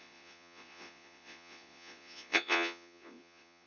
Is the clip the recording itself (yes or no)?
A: no